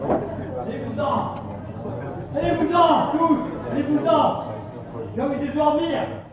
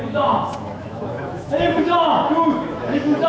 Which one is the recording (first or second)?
first